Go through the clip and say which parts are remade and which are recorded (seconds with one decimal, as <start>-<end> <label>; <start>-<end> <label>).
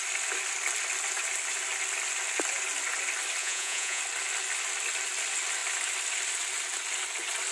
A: 0.0-3.4 recorded; 3.4-4.0 remade; 4.0-7.5 recorded